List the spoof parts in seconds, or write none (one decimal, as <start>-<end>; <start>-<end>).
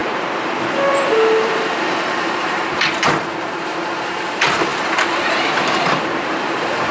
0.0-6.9